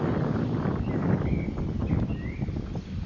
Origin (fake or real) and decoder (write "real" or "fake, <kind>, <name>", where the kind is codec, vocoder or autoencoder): real